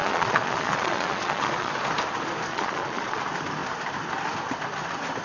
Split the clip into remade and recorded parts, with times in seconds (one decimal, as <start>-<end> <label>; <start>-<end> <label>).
0.0-1.7 remade; 1.7-2.5 recorded; 2.5-3.2 remade; 3.2-5.2 recorded